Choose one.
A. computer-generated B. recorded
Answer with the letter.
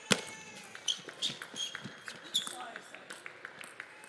B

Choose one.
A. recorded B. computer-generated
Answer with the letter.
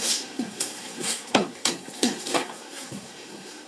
B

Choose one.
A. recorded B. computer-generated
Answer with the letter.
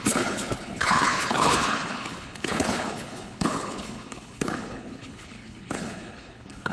B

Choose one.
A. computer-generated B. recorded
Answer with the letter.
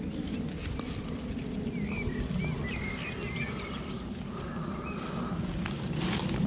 B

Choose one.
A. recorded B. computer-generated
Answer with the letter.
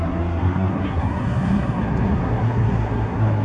B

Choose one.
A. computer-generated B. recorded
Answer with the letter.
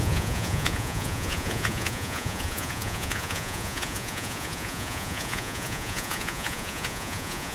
A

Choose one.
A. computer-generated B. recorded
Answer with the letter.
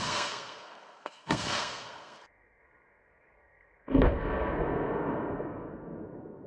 A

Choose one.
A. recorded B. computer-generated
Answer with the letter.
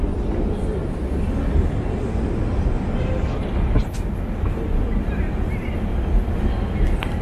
A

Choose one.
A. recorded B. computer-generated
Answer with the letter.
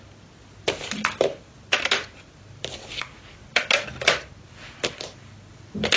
A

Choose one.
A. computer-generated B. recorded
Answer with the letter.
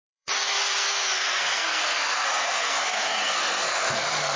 A